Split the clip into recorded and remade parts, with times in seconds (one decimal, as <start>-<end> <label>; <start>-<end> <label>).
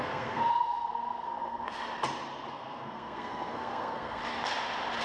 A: 0.0-1.8 remade; 1.8-2.5 recorded; 2.5-4.2 remade; 4.2-5.0 recorded